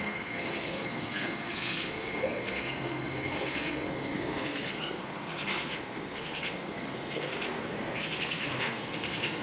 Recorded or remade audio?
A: remade